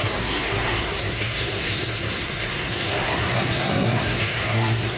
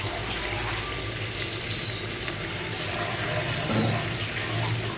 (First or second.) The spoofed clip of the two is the first